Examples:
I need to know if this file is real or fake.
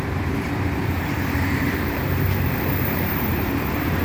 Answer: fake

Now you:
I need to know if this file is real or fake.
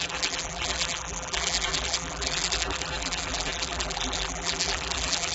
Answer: fake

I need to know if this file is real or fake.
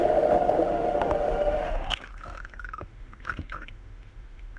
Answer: fake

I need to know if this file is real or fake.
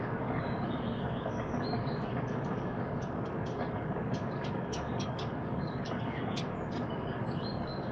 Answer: fake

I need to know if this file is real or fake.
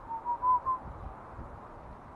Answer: real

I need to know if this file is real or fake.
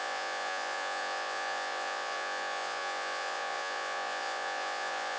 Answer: fake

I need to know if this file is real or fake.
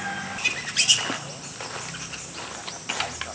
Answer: real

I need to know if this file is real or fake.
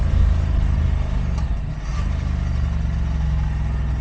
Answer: real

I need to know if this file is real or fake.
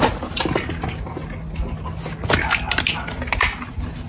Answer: real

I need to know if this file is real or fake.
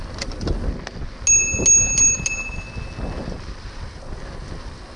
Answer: real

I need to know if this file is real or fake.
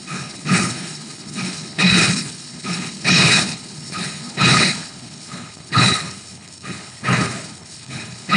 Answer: fake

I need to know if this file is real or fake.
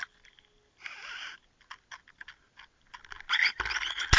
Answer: real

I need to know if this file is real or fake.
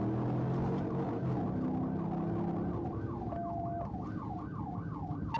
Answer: real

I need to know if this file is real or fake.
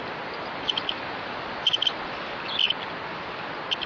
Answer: real